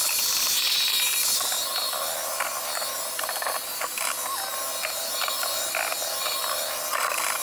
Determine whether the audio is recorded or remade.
recorded